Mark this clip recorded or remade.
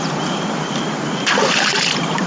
remade